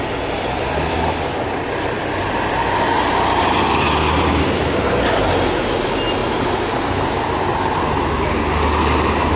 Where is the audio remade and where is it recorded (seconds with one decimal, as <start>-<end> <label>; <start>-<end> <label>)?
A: 0.0-9.4 recorded